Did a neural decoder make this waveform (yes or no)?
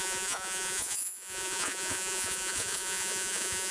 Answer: yes